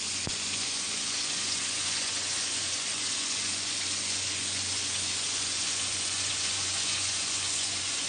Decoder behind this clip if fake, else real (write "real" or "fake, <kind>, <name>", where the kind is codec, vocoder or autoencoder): fake, vocoder, Vocos